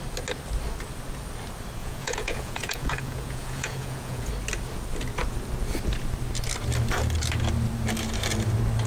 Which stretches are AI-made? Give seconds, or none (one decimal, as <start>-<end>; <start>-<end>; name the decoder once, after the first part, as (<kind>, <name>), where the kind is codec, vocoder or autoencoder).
1.8-4.3 (vocoder, Vocos)